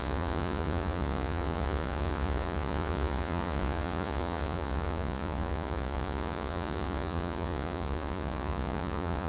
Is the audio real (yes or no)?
no